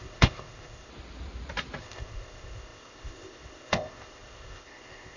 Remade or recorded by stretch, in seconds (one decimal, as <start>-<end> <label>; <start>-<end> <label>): 0.0-0.9 remade; 0.9-1.8 recorded; 1.8-5.2 remade